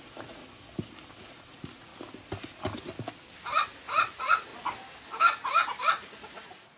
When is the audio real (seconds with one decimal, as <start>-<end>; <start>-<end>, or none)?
0.4-1.2; 1.9-4.1; 4.5-5.8

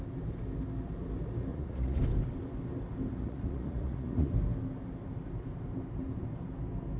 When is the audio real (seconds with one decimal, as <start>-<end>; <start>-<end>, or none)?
0.0-1.5; 2.0-3.1; 4.3-7.0

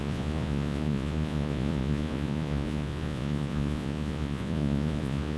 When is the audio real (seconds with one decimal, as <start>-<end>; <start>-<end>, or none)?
none

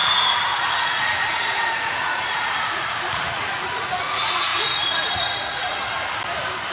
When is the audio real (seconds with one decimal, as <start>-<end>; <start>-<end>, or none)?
5.8-6.7

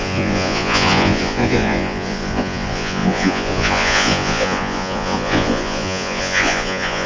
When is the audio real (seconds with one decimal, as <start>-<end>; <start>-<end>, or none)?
none

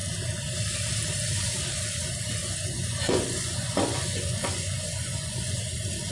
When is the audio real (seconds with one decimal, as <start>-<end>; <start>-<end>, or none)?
0.0-2.4; 5.6-6.1